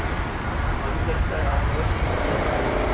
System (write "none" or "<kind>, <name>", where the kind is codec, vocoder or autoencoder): none